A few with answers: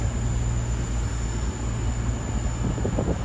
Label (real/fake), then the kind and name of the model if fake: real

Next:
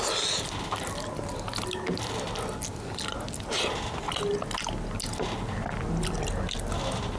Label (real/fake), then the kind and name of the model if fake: real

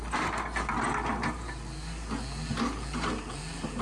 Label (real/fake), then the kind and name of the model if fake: real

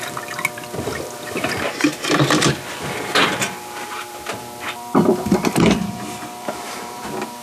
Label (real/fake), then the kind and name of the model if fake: fake, vocoder, BigVGAN v2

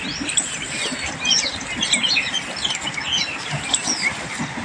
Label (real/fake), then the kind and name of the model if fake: real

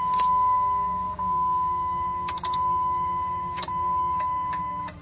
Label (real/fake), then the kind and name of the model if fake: fake, codec, DAC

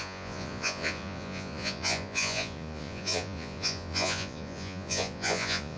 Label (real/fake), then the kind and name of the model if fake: fake, vocoder, Vocos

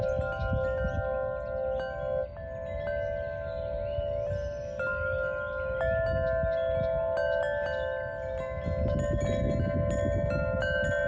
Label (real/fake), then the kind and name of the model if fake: real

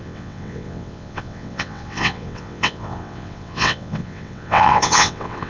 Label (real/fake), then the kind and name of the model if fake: fake, vocoder, WaveNeXt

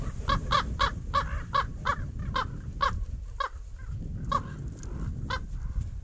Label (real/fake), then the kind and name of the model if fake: real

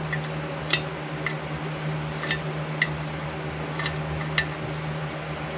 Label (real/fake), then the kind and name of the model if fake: real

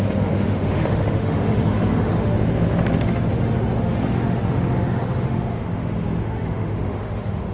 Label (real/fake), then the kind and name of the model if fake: fake, autoencoder, DAC-VAE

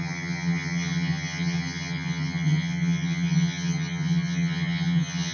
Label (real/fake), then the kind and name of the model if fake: fake, vocoder, HiFi-GAN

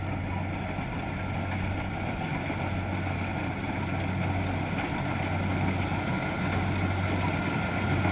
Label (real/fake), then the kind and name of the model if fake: real